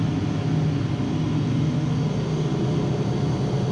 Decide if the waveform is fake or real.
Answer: real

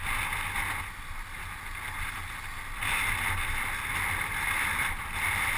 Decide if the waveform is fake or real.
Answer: real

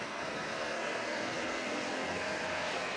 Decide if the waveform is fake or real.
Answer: fake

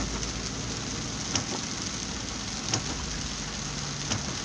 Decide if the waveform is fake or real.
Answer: real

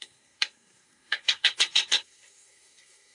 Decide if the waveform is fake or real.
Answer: fake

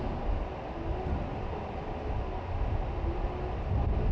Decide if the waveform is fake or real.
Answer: real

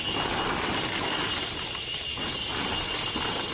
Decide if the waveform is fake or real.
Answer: real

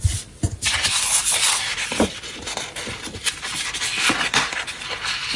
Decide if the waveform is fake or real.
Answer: real